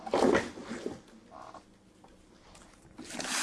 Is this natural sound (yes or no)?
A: yes